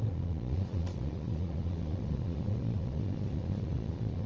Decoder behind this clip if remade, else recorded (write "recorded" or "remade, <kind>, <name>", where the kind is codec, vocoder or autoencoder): remade, vocoder, Vocos